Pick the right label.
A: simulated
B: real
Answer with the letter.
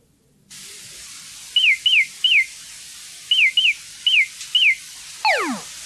B